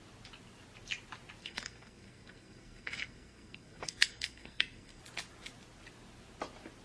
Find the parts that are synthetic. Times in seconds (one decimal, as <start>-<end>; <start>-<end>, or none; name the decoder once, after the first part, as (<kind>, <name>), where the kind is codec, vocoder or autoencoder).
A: 1.4-5.0 (codec, SNAC)